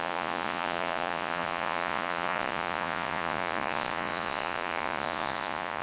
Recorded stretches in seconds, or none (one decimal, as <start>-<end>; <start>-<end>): none